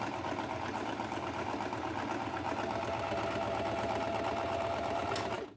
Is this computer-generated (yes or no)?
no